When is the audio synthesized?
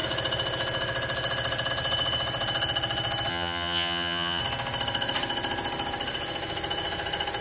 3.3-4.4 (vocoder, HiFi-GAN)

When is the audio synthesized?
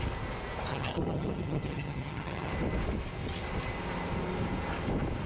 0.7-2.5 (vocoder, HiFi-GAN)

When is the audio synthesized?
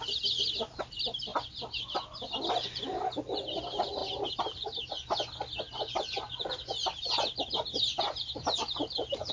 none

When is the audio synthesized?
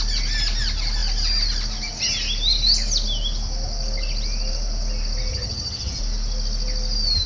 5.3-6.0 (vocoder, HiFi-GAN)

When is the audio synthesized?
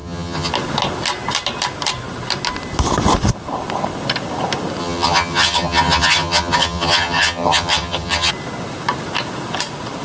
0.0-0.5 (vocoder, HiFi-GAN); 4.8-8.3